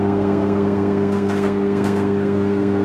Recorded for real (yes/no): no